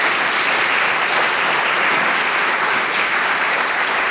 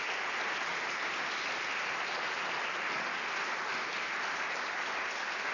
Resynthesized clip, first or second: first